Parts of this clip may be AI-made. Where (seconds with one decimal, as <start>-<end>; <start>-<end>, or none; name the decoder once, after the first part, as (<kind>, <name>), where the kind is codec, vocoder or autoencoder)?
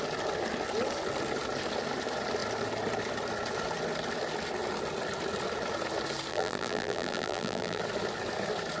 6.3-7.8 (vocoder, BigVGAN v2)